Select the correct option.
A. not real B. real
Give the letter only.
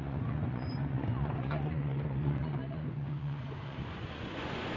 A